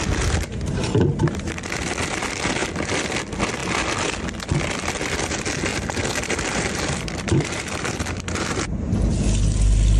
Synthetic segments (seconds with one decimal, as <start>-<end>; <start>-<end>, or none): 5.7-8.0